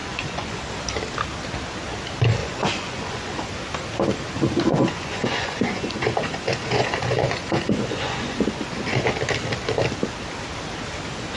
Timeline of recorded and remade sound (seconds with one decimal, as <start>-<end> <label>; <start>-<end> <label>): 0.0-0.6 remade; 0.6-2.4 recorded; 2.4-3.4 remade; 3.4-4.7 recorded; 4.7-9.0 remade; 9.0-11.4 recorded